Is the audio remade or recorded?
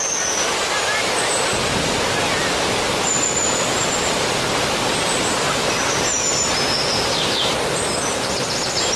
recorded